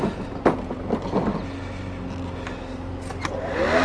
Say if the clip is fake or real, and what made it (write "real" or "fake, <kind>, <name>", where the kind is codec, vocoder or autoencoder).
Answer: real